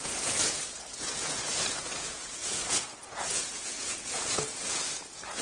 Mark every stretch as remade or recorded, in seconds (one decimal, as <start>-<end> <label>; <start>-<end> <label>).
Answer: 0.0-5.4 remade